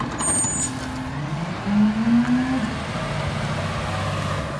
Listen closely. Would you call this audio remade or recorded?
recorded